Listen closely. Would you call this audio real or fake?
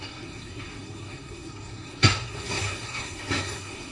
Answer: fake